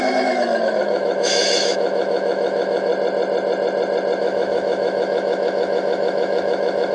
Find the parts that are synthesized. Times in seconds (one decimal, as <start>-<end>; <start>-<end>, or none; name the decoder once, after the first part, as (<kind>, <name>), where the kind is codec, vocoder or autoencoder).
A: 0.0-2.9 (autoencoder, DAC-VAE); 4.2-6.9